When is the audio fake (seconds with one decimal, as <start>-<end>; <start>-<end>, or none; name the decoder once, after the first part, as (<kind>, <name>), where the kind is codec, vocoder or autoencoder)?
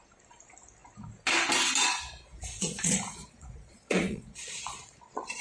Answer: 1.8-5.0 (vocoder, Vocos)